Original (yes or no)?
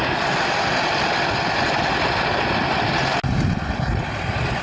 yes